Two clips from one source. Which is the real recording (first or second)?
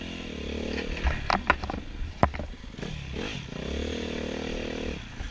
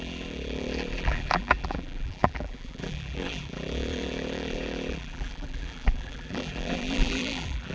first